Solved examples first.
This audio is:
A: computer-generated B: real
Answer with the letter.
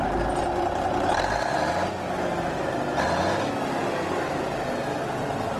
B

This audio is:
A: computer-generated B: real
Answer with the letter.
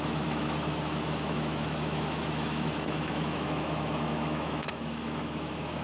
A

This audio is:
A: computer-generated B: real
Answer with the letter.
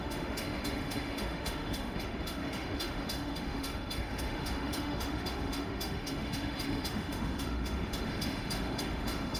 A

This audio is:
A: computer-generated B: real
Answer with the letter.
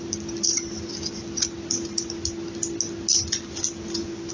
B